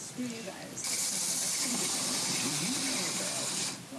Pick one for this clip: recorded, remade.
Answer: remade